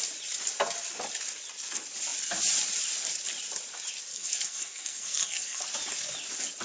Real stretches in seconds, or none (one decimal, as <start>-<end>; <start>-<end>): 0.0-4.1; 5.6-6.6